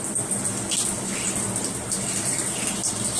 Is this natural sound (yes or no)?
yes